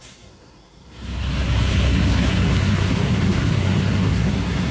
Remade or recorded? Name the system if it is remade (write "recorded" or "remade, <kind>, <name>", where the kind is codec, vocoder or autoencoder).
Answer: remade, codec, SNAC